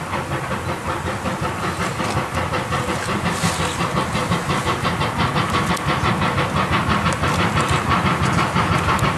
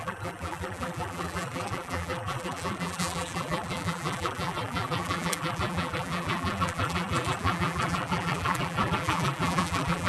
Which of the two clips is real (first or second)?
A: first